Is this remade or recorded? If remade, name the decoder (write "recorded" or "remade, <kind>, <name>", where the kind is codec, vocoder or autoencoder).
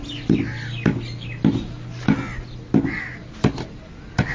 recorded